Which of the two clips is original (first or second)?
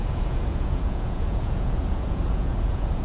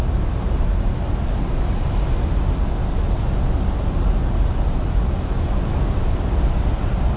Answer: second